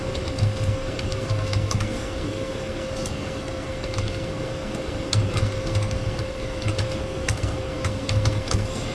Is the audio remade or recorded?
remade